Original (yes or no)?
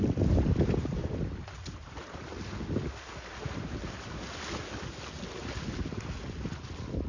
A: yes